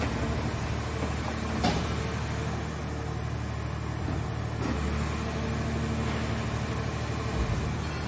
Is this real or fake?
real